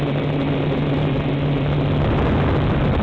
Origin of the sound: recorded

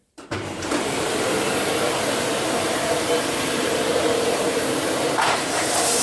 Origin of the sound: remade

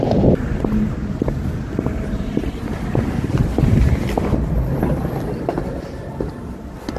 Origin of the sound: remade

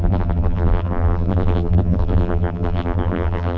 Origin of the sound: remade